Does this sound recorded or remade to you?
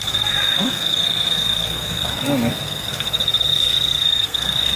remade